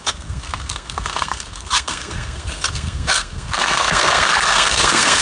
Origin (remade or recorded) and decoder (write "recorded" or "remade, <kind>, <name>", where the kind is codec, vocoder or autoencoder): remade, codec, SNAC